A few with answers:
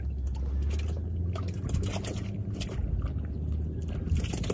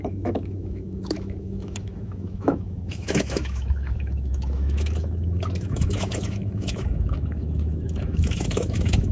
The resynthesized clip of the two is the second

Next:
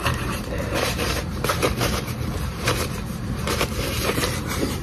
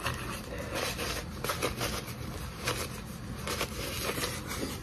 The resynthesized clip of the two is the first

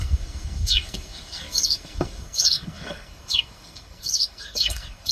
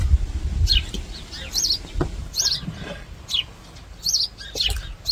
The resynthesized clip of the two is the first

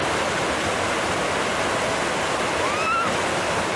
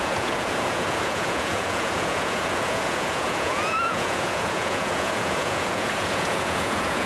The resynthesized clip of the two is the second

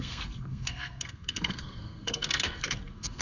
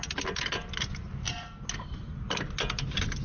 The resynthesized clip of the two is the first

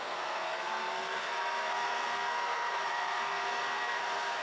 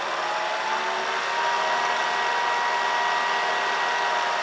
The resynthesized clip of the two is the first